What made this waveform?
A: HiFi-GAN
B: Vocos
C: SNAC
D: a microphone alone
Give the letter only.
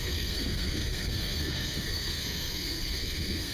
C